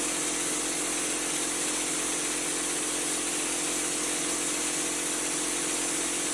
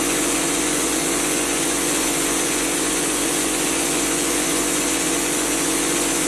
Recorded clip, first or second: first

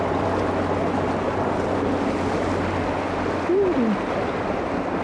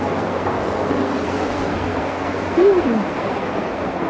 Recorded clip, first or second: first